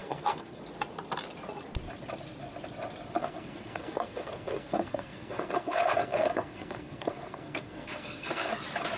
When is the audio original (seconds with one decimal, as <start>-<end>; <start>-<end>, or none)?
0.6-3.2; 8.5-9.0